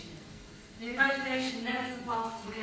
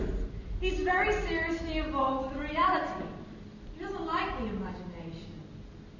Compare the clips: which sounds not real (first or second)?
first